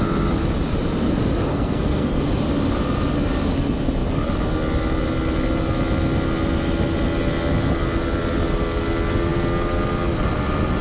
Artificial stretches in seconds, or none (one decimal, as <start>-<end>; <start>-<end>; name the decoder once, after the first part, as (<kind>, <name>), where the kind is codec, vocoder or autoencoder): 1.5-2.2 (codec, SNAC)